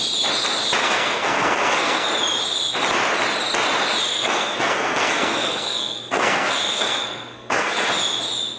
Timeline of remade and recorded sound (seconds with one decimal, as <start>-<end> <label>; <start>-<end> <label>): 0.0-0.8 recorded; 0.8-2.1 remade; 2.1-4.1 recorded; 4.1-7.9 remade; 7.9-8.6 recorded